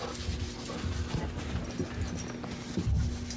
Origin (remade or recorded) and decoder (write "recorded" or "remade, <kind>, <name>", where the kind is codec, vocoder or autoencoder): recorded